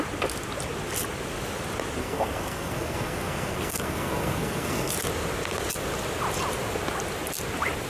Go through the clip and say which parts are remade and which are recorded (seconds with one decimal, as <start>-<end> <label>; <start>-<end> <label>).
0.0-2.0 recorded; 2.0-4.9 remade; 4.9-7.9 recorded